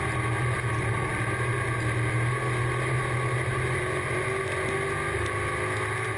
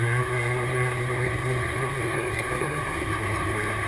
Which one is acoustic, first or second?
first